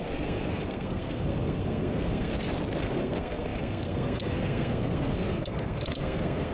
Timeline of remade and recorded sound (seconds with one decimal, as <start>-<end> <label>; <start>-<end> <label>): 0.0-2.3 remade; 2.3-2.8 recorded; 2.8-6.5 remade